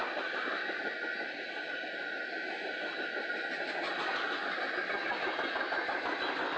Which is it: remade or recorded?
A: recorded